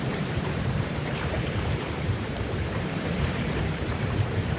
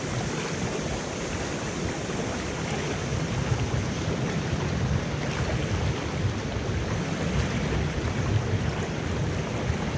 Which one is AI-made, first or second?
first